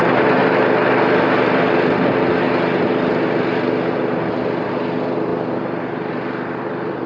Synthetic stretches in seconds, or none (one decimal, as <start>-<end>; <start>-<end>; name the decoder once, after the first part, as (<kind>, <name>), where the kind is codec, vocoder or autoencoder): none